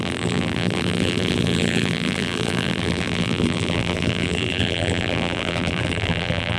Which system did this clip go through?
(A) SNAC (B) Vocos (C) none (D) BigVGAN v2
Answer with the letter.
D